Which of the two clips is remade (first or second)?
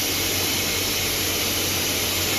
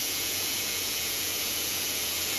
second